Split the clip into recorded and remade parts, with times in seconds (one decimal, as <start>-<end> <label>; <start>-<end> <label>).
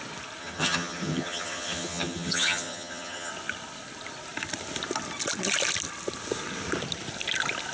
0.0-0.4 recorded; 0.4-3.3 remade; 3.3-7.7 recorded